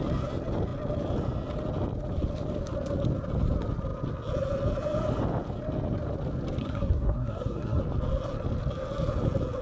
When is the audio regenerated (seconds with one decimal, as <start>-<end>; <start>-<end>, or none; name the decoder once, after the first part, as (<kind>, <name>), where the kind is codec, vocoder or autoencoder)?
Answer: 6.6-7.8 (codec, SNAC)